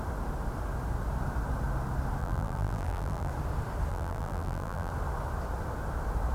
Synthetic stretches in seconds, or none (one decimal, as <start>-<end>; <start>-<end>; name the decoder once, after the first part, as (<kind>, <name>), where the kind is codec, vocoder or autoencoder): 2.2-3.3 (vocoder, BigVGAN v2); 3.9-4.9